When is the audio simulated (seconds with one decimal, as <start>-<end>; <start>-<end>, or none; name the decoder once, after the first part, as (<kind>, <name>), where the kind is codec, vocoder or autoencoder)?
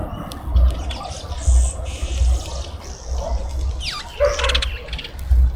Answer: none